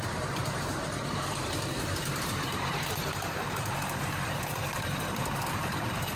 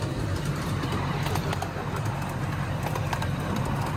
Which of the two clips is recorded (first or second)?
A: second